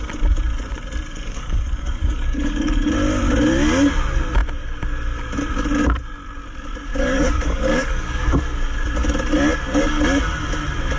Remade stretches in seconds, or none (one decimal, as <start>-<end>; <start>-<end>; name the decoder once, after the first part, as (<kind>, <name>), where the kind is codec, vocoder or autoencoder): 1.1-2.9 (codec, DAC); 6.9-8.4